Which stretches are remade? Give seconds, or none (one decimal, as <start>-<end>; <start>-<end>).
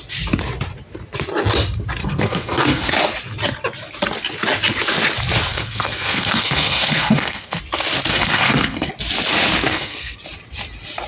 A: 2.0-2.9; 5.5-7.6; 8.1-8.9; 9.7-10.2